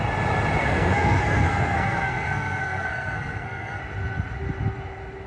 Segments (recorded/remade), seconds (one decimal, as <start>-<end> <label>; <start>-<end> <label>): 0.0-0.6 recorded; 0.6-3.8 remade; 3.8-5.3 recorded